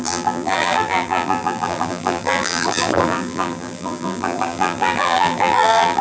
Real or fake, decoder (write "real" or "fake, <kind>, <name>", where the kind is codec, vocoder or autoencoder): fake, vocoder, BigVGAN v2